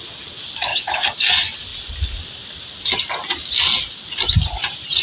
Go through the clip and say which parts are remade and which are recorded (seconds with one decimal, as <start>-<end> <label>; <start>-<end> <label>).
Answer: 0.0-0.7 recorded; 0.7-1.2 remade; 1.2-5.0 recorded